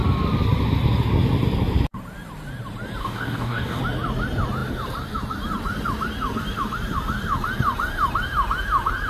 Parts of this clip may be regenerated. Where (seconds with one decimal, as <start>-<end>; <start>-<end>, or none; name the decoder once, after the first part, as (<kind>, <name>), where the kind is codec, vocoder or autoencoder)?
3.0-3.8 (codec, DAC)